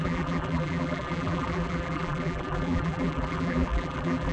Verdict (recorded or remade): remade